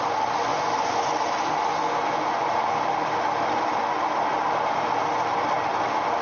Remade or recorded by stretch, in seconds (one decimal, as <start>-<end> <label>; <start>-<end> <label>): 0.0-0.5 recorded; 0.5-1.1 remade; 1.1-1.7 recorded; 1.7-2.5 remade; 2.5-6.2 recorded